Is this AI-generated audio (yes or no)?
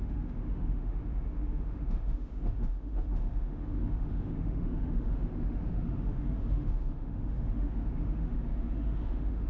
yes